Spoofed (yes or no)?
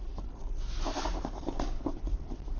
no